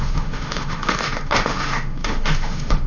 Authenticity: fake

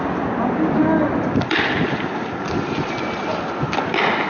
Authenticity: real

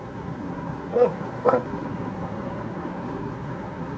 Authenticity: fake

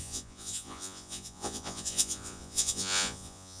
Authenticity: fake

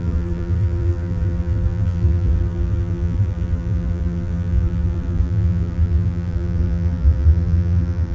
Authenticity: fake